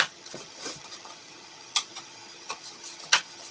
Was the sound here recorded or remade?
remade